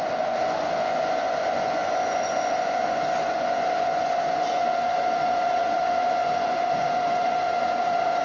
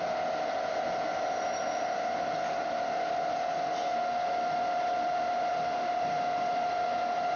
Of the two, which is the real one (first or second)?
second